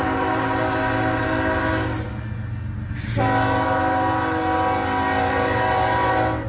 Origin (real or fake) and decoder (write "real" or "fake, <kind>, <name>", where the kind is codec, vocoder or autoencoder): real